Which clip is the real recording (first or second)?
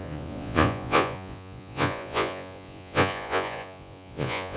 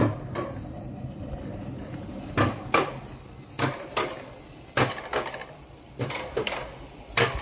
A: second